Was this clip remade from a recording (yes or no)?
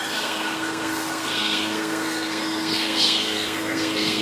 yes